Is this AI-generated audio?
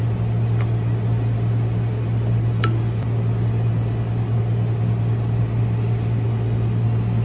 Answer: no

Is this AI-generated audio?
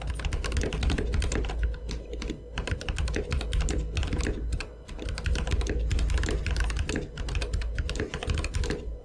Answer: no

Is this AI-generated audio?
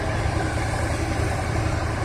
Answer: no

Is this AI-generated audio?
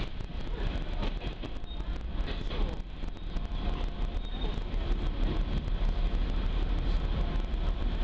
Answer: no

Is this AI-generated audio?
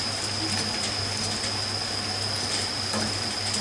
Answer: no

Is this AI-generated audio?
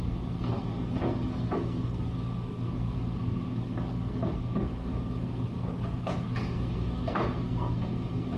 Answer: yes